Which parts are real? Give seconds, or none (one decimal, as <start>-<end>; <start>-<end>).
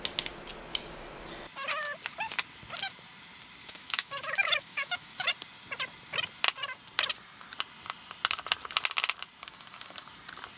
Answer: 0.0-3.6; 5.3-10.6